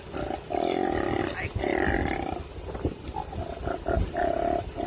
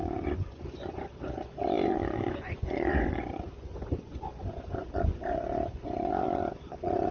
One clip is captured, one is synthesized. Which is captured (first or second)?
first